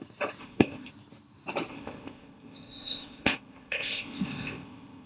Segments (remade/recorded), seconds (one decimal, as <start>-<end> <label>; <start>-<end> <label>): 0.0-0.4 recorded; 0.4-0.9 remade; 0.9-1.7 recorded; 1.7-5.1 remade